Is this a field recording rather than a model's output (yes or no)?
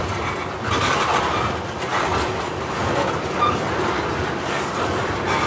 yes